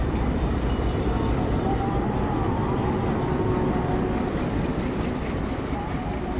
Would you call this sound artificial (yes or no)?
yes